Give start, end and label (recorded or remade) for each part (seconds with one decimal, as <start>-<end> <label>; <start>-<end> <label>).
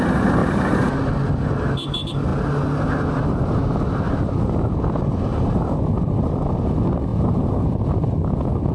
0.0-0.4 recorded; 0.4-1.0 remade; 1.0-5.3 recorded; 5.3-5.8 remade; 5.8-7.1 recorded; 7.1-7.6 remade; 7.6-8.7 recorded